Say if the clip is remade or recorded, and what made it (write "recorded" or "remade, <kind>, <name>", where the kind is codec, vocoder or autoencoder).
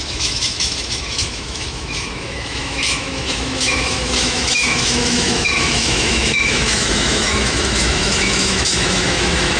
remade, autoencoder, DAC-VAE